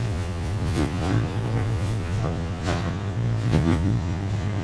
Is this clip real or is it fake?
fake